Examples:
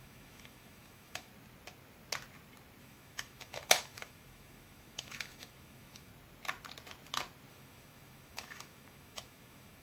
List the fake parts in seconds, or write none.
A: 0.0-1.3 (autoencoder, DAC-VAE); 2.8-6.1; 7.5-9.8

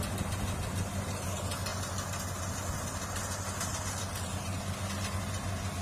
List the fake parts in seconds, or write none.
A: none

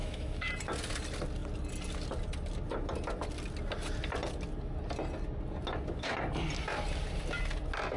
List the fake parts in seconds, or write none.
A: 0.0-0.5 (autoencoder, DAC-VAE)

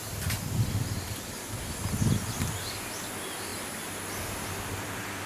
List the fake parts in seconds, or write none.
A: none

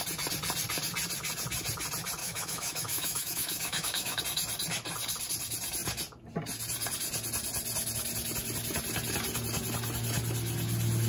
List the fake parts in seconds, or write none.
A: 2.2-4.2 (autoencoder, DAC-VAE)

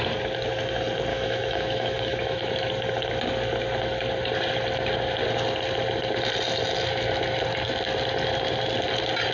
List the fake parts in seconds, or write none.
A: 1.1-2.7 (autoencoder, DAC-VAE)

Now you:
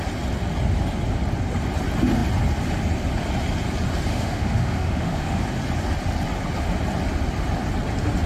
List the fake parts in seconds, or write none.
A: 4.1-5.4 (autoencoder, DAC-VAE)

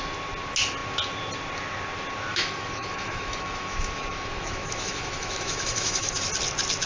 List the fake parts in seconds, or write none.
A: 2.3-6.3 (autoencoder, DAC-VAE)